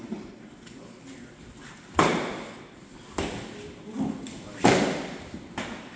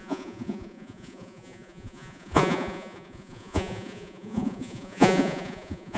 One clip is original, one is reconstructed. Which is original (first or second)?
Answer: first